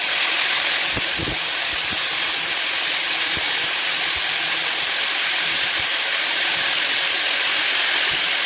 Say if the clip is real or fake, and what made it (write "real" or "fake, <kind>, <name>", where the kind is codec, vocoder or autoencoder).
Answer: real